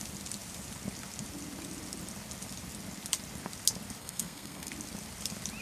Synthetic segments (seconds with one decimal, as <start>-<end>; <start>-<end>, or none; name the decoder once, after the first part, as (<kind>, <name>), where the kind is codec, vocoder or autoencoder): 4.0-4.7 (codec, SNAC)